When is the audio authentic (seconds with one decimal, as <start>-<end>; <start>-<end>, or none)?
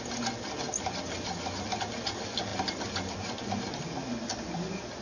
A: 0.0-5.0